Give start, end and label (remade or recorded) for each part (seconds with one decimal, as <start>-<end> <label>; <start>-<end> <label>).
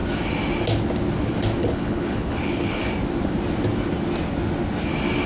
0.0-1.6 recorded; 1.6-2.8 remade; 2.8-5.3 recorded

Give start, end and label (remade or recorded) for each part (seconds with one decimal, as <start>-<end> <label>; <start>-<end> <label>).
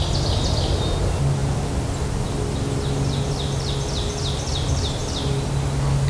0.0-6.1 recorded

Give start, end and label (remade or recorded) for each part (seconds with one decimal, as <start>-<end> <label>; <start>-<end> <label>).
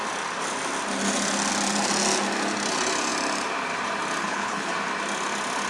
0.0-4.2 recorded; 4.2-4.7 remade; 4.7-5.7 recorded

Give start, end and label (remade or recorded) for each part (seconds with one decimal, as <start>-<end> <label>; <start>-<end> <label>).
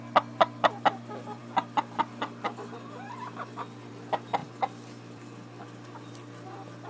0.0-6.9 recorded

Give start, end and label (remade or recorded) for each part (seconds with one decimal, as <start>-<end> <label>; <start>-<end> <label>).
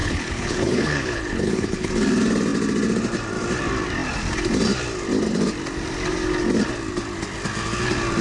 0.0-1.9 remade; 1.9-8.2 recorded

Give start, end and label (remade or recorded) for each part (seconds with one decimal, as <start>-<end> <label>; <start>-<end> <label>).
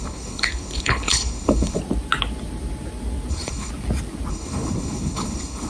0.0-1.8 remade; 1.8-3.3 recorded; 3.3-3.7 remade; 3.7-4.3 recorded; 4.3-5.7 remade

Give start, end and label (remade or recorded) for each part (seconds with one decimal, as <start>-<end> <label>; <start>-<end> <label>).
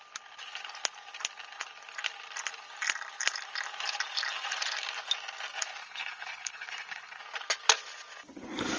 0.0-5.8 recorded; 5.8-7.2 remade; 7.2-8.8 recorded